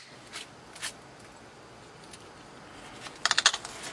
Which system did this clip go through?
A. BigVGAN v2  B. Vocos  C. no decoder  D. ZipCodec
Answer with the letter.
C